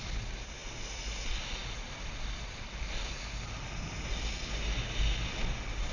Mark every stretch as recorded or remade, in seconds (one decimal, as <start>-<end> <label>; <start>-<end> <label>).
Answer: 0.0-5.9 recorded